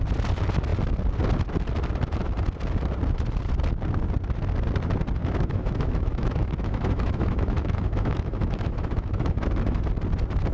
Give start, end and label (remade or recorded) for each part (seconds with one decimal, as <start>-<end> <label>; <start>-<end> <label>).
0.0-5.2 recorded; 5.2-9.8 remade; 9.8-10.5 recorded